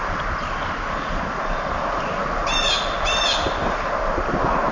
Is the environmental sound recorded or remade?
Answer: recorded